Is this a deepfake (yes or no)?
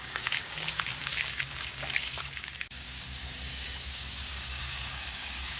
yes